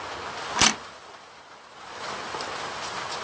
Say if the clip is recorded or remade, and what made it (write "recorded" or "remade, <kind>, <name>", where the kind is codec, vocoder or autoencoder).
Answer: recorded